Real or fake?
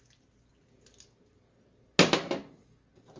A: real